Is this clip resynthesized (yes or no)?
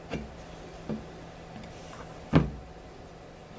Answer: no